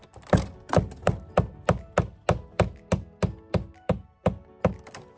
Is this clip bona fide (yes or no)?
yes